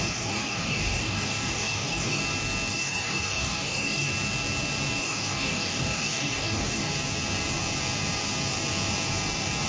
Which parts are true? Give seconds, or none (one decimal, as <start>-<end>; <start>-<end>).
2.2-2.7; 4.1-5.0; 6.9-9.7